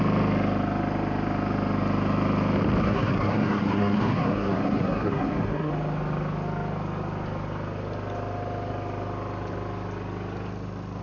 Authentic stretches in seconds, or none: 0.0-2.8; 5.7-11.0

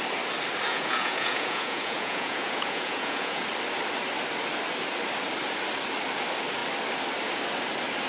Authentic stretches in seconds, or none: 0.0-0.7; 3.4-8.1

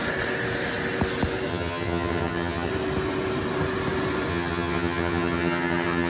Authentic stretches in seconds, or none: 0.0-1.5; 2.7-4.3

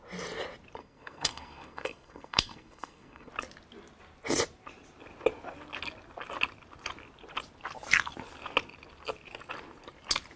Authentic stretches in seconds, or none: 0.0-0.8; 3.3-10.4